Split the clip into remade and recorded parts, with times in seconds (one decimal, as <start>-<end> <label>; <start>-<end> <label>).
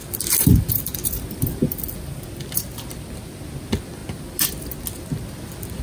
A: 0.0-2.2 remade; 2.2-5.8 recorded